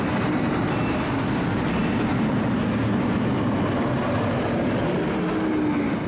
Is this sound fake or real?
real